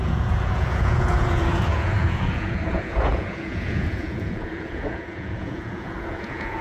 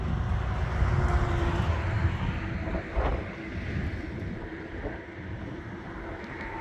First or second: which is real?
second